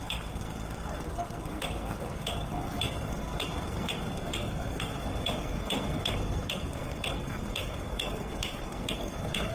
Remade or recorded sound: remade